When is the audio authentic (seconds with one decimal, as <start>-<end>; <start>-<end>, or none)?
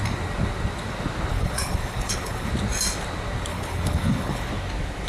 0.0-1.3; 2.5-3.5; 4.5-5.1